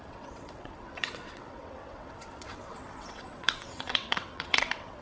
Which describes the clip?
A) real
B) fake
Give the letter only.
B